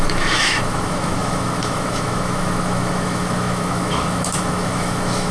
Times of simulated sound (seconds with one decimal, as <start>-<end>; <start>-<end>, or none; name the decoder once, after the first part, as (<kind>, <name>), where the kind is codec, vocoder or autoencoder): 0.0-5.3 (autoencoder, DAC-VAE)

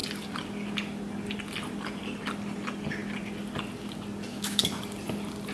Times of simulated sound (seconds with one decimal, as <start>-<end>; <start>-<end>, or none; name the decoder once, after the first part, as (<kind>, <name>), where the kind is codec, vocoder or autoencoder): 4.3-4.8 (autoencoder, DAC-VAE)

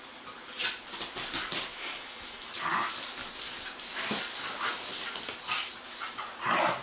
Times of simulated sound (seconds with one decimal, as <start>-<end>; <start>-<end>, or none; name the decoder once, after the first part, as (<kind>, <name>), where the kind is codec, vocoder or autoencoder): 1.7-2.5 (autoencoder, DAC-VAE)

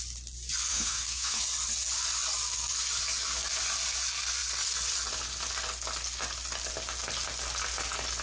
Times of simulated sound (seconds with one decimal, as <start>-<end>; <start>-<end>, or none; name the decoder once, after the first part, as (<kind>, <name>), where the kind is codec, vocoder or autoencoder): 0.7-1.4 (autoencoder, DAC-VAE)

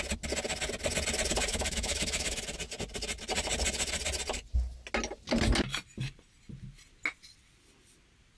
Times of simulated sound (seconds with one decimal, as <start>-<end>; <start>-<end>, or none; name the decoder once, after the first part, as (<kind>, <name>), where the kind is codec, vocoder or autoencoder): 1.5-2.4 (autoencoder, DAC-VAE)